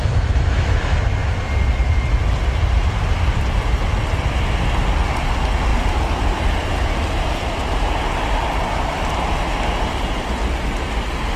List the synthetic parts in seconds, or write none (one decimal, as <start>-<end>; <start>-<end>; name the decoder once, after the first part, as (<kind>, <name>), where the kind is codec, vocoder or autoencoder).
none